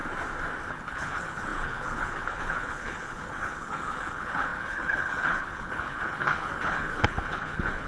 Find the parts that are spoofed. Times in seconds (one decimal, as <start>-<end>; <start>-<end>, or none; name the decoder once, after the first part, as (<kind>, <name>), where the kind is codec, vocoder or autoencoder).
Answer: 0.7-7.9 (codec, HILCodec)

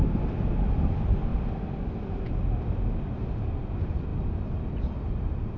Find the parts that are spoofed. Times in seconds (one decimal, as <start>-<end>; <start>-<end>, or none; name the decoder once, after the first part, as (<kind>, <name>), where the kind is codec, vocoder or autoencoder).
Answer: none

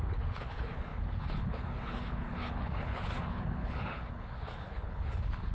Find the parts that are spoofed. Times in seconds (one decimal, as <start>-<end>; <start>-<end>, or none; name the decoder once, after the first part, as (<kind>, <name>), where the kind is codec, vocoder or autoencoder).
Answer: 0.0-5.5 (codec, HILCodec)